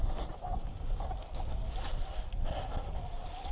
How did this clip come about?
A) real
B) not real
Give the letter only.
A